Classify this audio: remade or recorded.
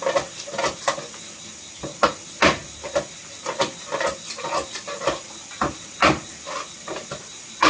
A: recorded